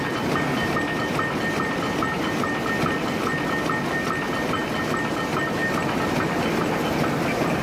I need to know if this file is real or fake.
real